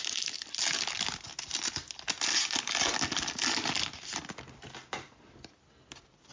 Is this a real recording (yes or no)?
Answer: yes